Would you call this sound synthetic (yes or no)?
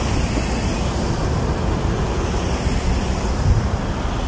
no